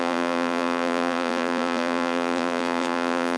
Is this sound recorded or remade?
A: remade